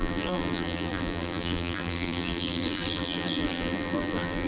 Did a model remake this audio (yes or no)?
yes